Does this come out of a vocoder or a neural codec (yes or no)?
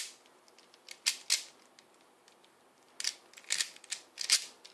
no